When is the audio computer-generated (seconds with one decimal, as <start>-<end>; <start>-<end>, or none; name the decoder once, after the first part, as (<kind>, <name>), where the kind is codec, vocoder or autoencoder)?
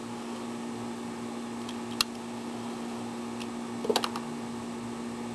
none